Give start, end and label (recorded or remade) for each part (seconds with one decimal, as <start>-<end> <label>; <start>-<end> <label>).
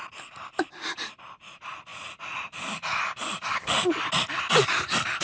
0.0-5.2 recorded